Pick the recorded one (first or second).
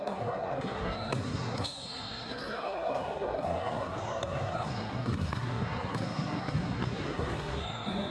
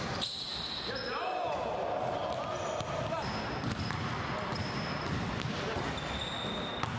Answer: second